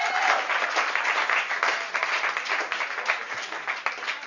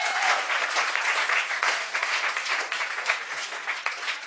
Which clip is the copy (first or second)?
second